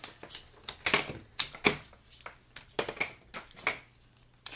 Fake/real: real